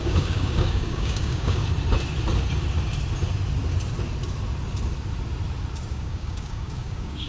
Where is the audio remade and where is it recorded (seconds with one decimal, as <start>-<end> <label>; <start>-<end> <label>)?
0.0-1.6 remade; 1.6-5.9 recorded; 5.9-7.3 remade